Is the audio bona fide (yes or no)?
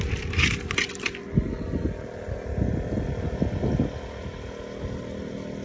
yes